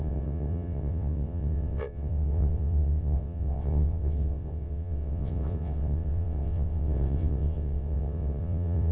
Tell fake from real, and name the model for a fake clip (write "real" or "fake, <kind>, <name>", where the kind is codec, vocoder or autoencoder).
fake, vocoder, WaveNeXt